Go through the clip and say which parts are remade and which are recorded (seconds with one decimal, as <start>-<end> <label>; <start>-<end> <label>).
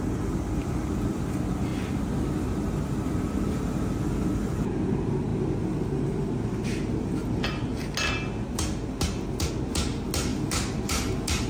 0.0-11.5 recorded